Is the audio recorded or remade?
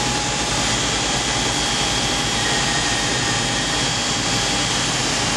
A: recorded